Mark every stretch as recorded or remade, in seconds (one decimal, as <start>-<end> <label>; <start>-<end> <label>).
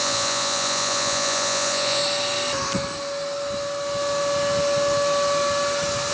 0.0-2.0 remade; 2.0-6.1 recorded